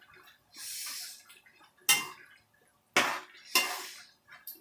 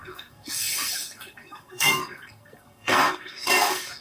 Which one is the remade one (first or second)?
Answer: second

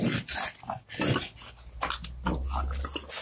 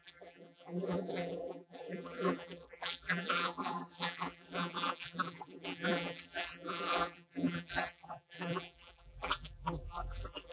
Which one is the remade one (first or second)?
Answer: second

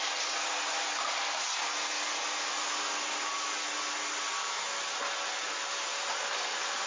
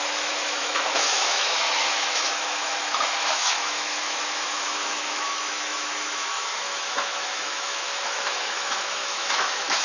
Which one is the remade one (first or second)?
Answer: second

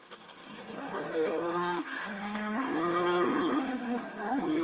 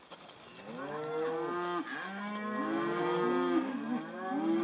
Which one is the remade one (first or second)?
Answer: first